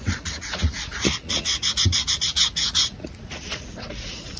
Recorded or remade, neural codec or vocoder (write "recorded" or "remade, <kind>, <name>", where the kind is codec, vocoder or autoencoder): remade, vocoder, Vocos